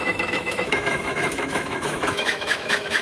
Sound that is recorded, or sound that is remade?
remade